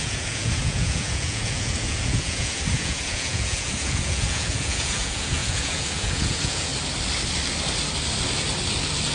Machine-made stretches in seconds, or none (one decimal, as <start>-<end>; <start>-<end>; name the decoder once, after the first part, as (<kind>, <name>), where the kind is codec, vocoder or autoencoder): 0.0-6.7 (vocoder, Vocos)